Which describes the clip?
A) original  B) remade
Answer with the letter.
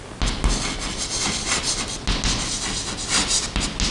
A